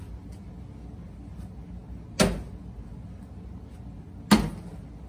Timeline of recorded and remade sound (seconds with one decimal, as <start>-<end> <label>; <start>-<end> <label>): 0.0-5.1 recorded